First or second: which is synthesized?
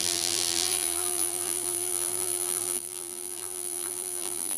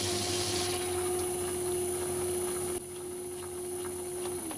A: first